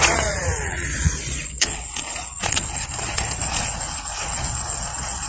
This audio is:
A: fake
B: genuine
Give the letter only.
A